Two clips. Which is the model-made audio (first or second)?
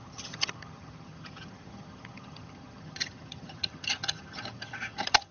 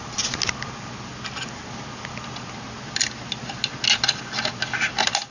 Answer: first